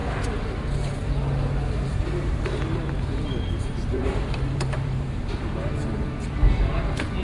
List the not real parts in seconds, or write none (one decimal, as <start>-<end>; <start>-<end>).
1.9-5.2